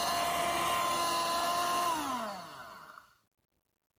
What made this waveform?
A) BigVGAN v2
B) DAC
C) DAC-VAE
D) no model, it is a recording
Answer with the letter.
D